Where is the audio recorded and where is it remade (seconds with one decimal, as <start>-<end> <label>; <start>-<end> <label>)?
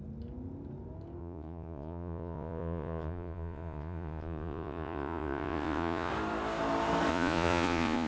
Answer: 0.0-1.2 recorded; 1.2-6.1 remade; 6.1-7.1 recorded; 7.1-8.1 remade